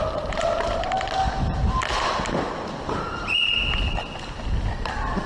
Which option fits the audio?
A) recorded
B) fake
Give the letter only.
A